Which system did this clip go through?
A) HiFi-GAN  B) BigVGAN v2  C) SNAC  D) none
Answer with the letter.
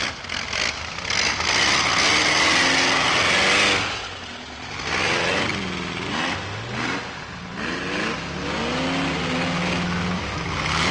D